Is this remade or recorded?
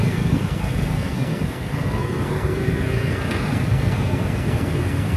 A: remade